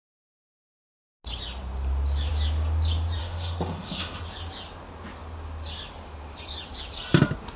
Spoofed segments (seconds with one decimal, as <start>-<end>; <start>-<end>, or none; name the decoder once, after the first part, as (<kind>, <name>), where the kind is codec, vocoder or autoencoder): 3.2-4.2 (autoencoder, DAC-VAE)